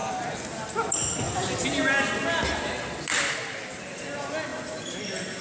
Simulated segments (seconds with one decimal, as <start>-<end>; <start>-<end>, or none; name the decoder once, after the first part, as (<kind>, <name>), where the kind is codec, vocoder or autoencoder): none